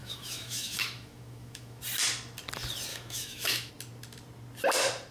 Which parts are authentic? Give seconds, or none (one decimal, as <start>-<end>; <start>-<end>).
1.8-2.9; 3.7-5.1